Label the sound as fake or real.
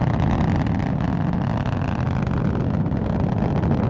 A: real